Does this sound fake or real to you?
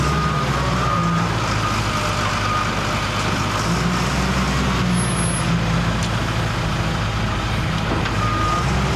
real